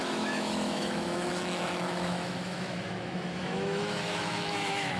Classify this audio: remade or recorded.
remade